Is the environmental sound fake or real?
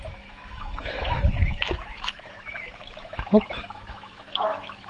fake